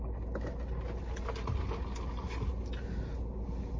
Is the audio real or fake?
real